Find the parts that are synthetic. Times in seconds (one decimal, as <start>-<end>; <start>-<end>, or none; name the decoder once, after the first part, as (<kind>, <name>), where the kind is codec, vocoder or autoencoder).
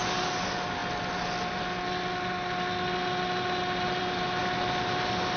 none